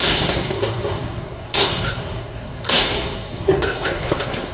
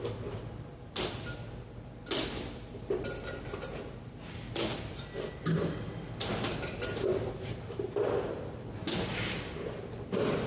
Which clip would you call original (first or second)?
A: second